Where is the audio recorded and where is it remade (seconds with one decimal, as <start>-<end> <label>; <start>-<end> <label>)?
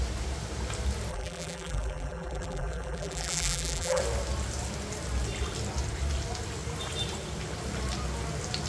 0.0-1.1 recorded; 1.1-4.0 remade; 4.0-8.7 recorded